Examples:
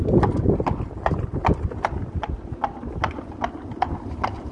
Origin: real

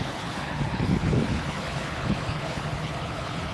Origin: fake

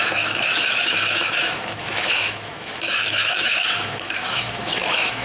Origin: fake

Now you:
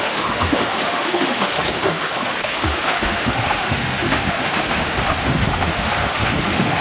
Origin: fake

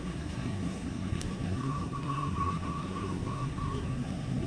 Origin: fake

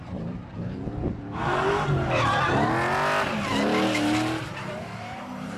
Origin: real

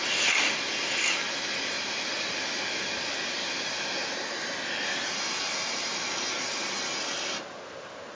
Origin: real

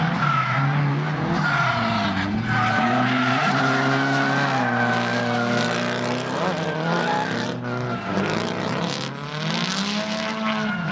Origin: real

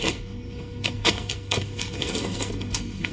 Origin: fake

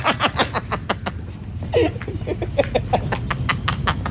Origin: real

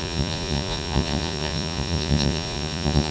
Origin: fake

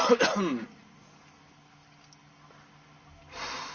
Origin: real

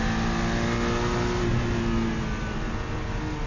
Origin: real